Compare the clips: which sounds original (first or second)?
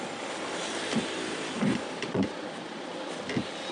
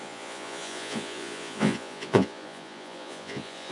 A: first